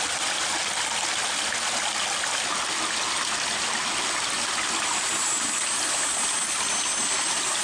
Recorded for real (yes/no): yes